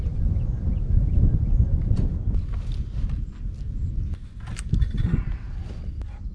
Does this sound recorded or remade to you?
recorded